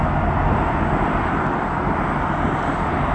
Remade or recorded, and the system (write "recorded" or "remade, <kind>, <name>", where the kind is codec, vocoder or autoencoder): recorded